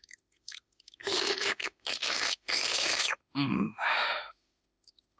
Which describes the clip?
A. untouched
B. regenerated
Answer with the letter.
B